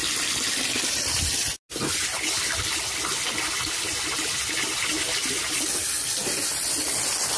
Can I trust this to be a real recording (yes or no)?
yes